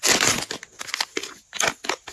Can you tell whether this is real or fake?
real